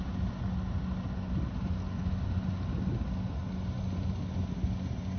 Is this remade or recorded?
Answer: recorded